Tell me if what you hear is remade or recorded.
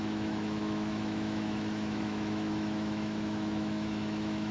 remade